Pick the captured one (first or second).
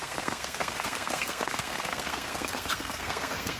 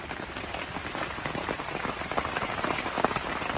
second